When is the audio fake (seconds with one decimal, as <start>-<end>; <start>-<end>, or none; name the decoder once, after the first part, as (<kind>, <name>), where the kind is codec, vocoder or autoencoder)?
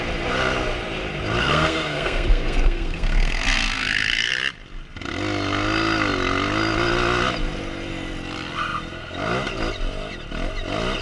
1.4-4.3 (codec, SNAC)